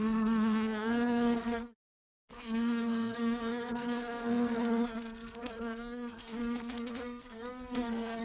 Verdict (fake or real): fake